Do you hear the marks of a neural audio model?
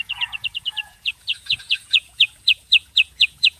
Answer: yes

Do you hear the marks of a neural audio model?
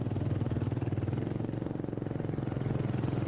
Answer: no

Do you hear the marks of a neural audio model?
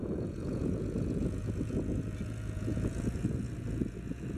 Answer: yes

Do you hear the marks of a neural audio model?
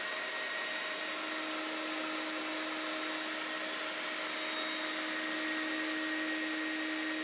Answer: no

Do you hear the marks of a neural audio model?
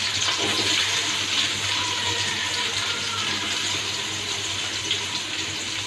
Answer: no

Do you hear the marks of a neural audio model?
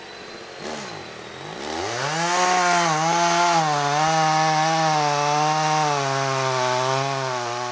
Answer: no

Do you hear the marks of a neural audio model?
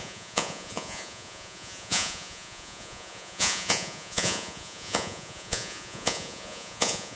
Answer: yes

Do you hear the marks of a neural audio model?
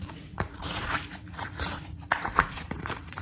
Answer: yes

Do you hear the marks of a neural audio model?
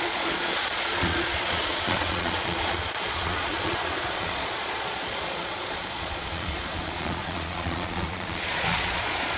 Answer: yes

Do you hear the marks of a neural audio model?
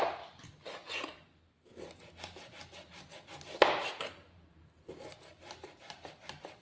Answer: no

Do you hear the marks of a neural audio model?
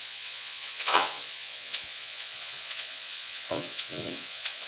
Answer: yes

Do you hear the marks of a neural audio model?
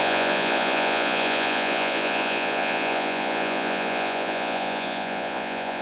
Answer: yes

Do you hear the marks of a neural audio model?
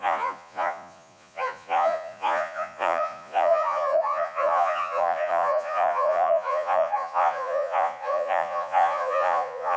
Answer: yes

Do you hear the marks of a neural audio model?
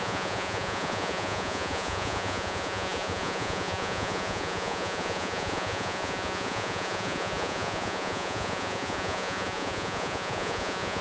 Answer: yes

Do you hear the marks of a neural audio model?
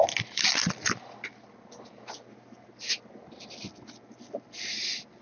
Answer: no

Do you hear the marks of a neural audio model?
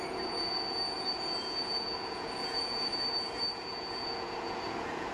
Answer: yes